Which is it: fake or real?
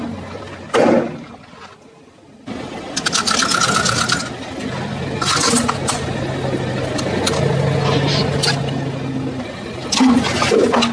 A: real